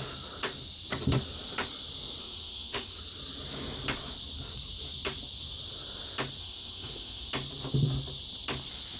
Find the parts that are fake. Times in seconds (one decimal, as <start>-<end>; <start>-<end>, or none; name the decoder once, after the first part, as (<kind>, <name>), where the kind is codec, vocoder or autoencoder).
2.2-3.0 (autoencoder, DAC-VAE); 6.4-7.3